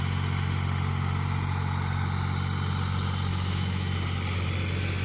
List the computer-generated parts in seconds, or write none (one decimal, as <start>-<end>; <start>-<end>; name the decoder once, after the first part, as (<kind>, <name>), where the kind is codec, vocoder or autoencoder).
3.3-3.9 (autoencoder, DAC-VAE)